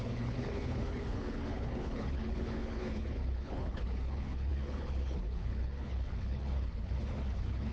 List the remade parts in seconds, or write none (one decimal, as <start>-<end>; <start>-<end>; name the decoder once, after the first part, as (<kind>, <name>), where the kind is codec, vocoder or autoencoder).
0.0-7.7 (codec, HILCodec)

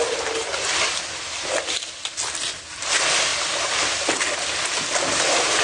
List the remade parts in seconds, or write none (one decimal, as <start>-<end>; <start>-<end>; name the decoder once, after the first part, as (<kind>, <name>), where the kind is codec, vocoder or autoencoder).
none

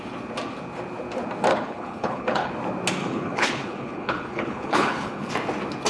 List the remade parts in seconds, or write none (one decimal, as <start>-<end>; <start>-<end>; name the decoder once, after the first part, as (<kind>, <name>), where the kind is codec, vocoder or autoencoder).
1.5-2.5 (codec, HILCodec); 3.0-5.3

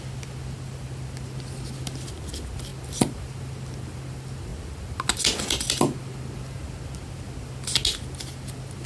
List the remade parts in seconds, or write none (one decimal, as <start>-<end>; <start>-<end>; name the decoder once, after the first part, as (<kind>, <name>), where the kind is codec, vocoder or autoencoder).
none

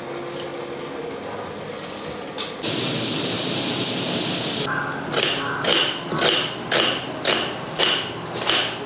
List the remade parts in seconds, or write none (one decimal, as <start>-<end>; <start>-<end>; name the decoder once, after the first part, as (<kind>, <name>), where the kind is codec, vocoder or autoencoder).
none